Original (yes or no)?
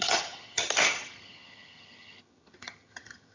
no